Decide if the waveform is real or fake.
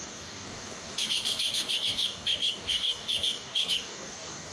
fake